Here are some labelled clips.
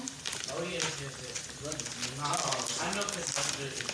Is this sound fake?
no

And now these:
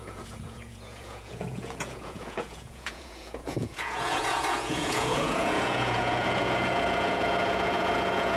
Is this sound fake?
yes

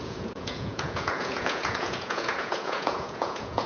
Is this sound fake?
yes